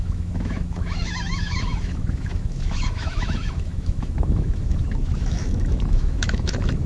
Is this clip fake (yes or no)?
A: yes